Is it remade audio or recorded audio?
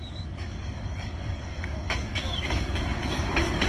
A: remade